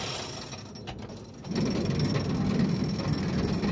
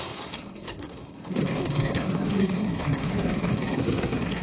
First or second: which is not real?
second